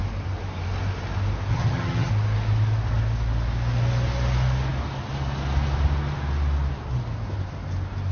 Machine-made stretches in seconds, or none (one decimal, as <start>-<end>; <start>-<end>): 1.5-2.1